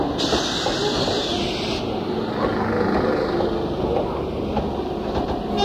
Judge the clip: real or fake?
real